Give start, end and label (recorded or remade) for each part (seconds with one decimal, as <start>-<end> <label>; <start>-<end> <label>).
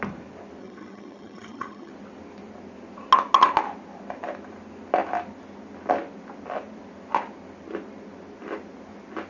0.0-0.6 recorded; 0.6-1.9 remade; 1.9-9.3 recorded